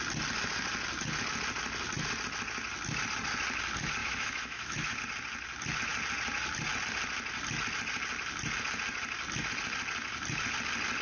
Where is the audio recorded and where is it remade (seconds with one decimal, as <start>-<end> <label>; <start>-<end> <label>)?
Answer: 0.0-4.0 recorded; 4.0-5.0 remade; 5.0-11.0 recorded

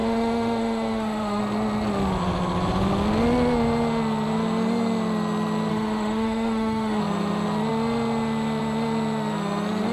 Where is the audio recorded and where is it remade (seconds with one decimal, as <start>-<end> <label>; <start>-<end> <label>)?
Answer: 0.0-1.4 remade; 1.4-5.7 recorded; 5.7-7.0 remade; 7.0-9.9 recorded

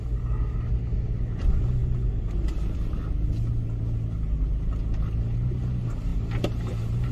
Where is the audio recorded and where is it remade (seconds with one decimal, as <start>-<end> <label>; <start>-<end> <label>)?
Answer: 0.0-7.1 recorded

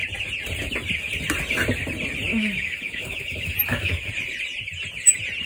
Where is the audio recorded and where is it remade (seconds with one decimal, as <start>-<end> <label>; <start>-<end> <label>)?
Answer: 0.0-2.3 recorded; 2.3-4.1 remade; 4.1-5.5 recorded

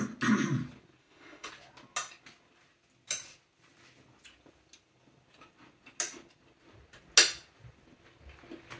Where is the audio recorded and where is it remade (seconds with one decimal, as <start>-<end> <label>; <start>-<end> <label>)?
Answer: 0.0-1.0 recorded; 1.0-1.5 remade; 1.5-8.8 recorded

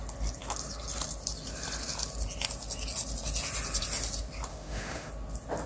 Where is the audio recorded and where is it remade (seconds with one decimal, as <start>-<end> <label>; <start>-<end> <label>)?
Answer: 0.0-4.5 recorded; 4.5-5.1 remade; 5.1-5.7 recorded

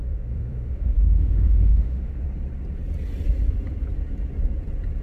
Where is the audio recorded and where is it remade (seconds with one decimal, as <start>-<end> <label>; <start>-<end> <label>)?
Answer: 0.0-2.2 remade; 2.2-5.0 recorded